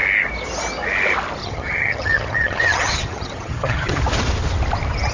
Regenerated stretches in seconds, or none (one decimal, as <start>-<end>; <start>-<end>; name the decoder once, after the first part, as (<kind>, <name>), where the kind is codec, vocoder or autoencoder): 1.4-4.0 (vocoder, HiFi-GAN)